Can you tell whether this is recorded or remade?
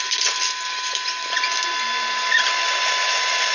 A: recorded